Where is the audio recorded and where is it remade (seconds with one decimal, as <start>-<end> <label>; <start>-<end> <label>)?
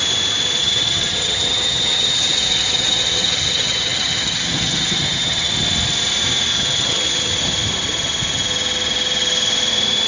0.0-0.6 recorded; 0.6-5.5 remade; 5.5-6.5 recorded; 6.5-7.3 remade; 7.3-10.1 recorded